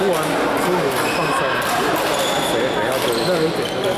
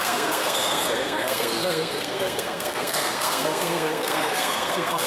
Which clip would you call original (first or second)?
first